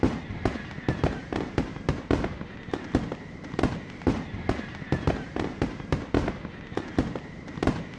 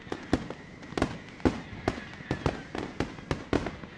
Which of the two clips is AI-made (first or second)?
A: first